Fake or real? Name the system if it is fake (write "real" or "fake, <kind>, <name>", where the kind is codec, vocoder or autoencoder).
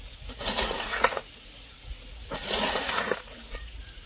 fake, vocoder, Vocos